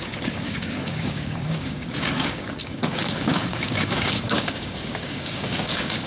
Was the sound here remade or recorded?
remade